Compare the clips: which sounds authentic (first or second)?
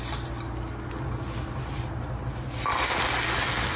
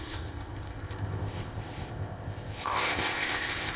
first